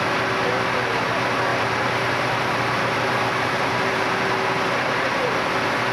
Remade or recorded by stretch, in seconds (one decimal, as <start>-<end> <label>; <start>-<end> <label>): 0.0-1.5 recorded; 1.5-4.0 remade; 4.0-5.9 recorded